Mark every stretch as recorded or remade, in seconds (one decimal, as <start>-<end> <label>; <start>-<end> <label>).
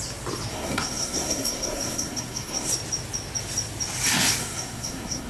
0.0-0.5 recorded; 0.5-2.7 remade; 2.7-4.4 recorded; 4.4-5.3 remade